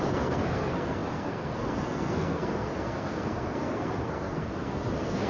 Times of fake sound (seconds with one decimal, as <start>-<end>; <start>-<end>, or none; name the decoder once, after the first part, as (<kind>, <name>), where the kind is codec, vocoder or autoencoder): 0.0-5.3 (codec, SNAC)